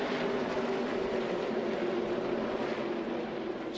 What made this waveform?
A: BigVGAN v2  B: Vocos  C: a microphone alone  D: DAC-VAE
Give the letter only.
C